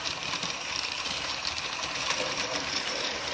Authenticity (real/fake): fake